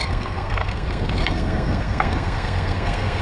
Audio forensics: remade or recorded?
remade